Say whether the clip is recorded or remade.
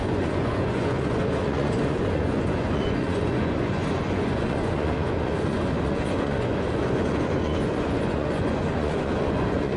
remade